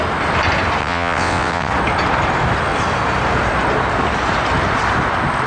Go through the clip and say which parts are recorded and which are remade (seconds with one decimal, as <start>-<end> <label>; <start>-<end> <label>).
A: 0.0-0.8 recorded; 0.8-1.7 remade; 1.7-5.5 recorded